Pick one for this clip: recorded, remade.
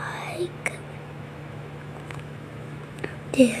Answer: remade